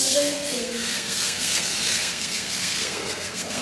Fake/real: fake